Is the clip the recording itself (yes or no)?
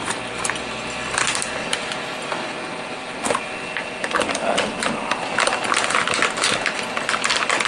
yes